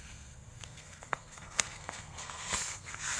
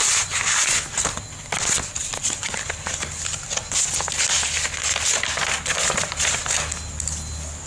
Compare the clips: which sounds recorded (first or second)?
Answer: second